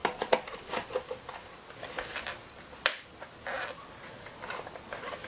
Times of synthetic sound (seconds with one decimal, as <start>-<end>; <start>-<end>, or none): none